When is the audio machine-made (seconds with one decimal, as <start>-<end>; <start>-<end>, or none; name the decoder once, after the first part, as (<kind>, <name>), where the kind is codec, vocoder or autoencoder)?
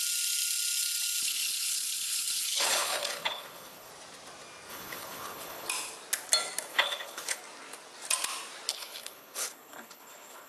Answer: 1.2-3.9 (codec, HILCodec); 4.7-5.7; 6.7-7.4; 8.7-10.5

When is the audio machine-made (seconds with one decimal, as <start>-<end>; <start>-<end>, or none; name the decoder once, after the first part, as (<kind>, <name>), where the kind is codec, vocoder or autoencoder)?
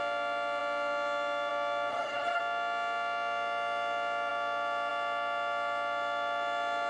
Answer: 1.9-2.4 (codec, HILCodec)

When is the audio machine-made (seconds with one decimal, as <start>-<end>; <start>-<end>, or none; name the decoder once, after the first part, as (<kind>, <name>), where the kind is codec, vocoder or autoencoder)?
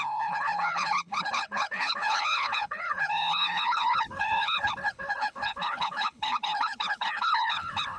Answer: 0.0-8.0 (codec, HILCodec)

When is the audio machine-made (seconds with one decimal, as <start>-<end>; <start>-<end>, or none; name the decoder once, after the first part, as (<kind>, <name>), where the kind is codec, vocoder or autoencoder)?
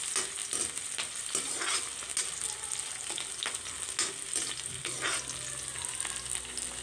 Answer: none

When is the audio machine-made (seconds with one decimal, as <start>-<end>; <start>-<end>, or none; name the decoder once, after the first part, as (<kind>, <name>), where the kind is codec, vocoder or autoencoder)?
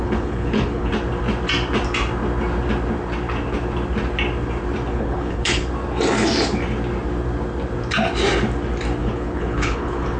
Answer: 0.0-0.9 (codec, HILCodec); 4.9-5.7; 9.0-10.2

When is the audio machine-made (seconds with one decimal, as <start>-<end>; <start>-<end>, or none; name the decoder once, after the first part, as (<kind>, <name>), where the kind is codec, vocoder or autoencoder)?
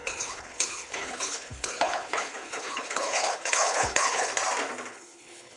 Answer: 0.0-4.3 (codec, HILCodec); 4.9-5.6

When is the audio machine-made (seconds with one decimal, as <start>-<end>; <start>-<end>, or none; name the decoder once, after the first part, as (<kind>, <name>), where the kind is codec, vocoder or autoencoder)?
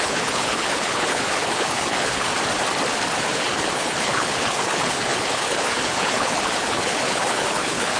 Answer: 0.0-2.3 (codec, HILCodec); 3.2-8.0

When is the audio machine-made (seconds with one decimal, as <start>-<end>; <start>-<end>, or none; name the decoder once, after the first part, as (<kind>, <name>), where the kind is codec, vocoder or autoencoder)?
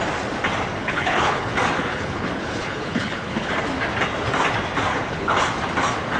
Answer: 0.8-1.5 (codec, HILCodec); 1.9-3.5; 4.9-5.4